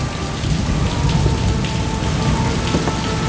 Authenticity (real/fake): real